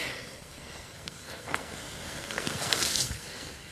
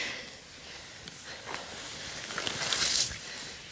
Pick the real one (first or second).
second